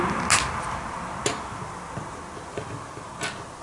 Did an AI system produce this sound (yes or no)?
no